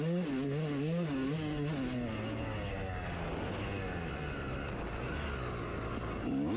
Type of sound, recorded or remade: recorded